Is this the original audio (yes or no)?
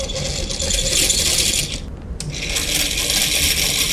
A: yes